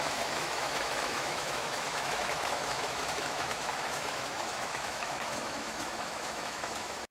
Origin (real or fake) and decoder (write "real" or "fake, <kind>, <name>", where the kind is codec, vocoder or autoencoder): fake, autoencoder, DAC-VAE